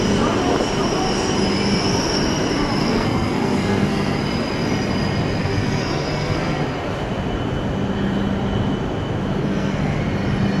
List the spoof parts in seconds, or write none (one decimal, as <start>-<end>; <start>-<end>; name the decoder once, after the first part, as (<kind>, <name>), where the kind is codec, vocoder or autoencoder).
2.8-4.2 (codec, SNAC); 5.4-6.6; 9.4-10.0